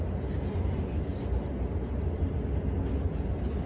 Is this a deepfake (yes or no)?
no